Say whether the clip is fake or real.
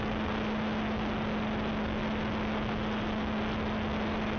real